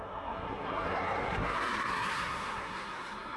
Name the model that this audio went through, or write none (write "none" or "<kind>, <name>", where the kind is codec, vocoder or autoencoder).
codec, SNAC